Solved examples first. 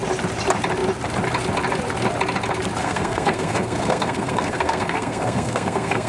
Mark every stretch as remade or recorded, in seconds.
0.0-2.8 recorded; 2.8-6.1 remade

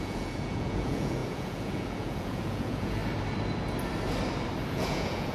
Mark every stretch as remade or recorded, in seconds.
0.0-3.0 remade; 3.0-4.7 recorded; 4.7-5.3 remade